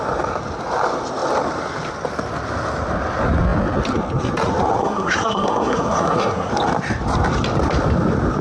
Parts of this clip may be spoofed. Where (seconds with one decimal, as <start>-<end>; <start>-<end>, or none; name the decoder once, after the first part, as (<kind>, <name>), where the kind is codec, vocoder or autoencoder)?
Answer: 4.8-6.5 (codec, SNAC)